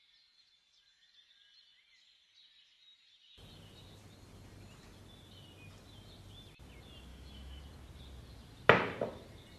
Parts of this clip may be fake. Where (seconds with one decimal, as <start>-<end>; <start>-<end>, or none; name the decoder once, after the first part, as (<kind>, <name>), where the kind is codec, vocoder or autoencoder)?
7.1-7.6 (autoencoder, DAC-VAE)